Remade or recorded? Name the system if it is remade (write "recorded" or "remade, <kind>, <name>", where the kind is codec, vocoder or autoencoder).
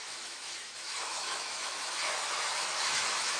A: remade, autoencoder, DAC-VAE